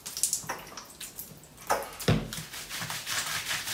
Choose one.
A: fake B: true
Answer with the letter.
B